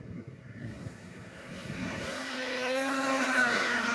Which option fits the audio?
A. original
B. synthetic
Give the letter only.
B